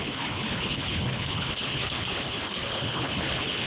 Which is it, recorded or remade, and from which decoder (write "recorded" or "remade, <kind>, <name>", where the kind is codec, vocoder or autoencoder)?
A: remade, codec, HILCodec